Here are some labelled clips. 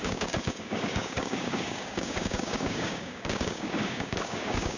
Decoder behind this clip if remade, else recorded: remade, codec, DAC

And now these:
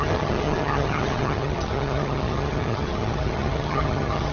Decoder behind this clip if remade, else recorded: remade, vocoder, HiFi-GAN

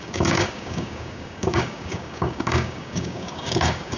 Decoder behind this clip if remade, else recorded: remade, codec, DAC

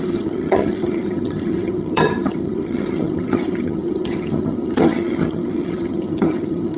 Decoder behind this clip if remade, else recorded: remade, vocoder, HiFi-GAN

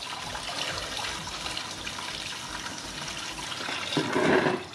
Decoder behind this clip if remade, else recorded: recorded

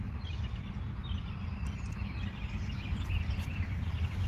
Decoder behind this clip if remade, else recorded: recorded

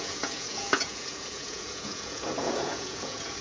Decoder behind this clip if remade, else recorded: remade, vocoder, Vocos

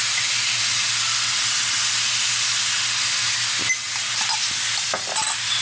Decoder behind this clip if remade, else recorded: recorded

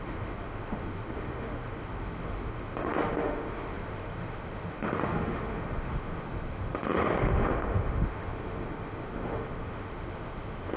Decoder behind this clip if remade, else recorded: remade, autoencoder, DAC-VAE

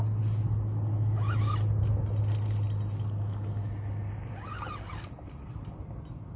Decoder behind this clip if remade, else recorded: recorded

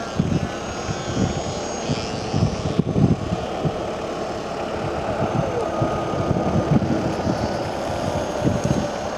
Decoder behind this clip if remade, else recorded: recorded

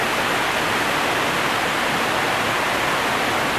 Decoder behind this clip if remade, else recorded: recorded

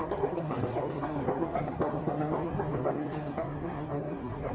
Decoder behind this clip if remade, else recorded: remade, codec, SNAC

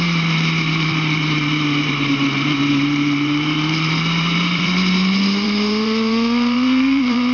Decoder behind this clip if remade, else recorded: remade, vocoder, BigVGAN v2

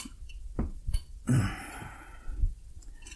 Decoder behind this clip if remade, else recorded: remade, vocoder, BigVGAN v2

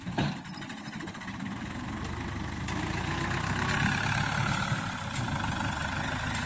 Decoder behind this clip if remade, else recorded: recorded